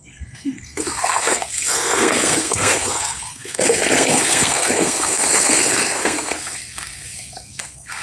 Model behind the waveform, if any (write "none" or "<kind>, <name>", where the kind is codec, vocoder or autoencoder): codec, SNAC